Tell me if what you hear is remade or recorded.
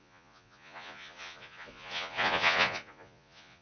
remade